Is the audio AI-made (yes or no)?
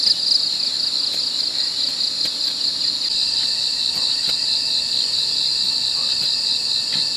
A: no